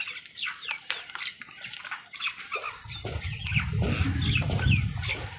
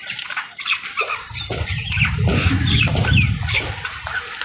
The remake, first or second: second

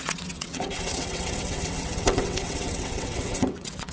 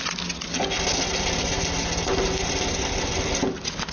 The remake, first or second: first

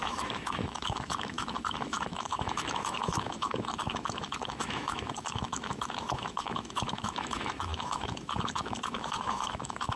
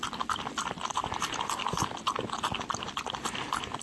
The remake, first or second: first